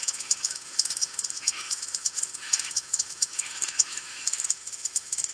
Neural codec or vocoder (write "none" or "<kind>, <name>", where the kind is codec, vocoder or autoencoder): autoencoder, DAC-VAE